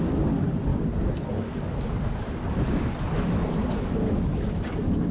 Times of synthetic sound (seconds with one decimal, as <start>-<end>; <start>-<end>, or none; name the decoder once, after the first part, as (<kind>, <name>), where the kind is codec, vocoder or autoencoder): none